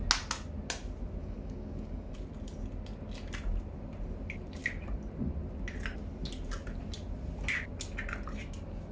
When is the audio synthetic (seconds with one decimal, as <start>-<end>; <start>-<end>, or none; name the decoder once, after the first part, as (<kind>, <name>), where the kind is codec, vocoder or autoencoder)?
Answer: 1.2-2.1 (codec, DAC)

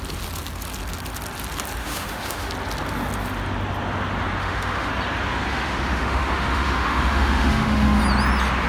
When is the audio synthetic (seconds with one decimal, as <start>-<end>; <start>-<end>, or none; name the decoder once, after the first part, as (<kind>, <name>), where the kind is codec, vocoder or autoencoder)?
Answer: 1.8-2.5 (autoencoder, DAC-VAE); 4.4-4.9; 5.5-8.0

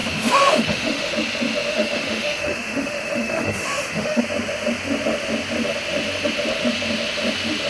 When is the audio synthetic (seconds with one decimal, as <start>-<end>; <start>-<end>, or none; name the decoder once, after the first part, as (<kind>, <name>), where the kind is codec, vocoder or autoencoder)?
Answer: 0.0-1.1 (autoencoder, DAC-VAE); 1.7-4.2